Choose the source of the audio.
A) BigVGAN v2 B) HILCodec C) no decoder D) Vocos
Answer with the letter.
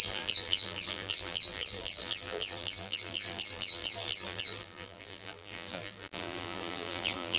A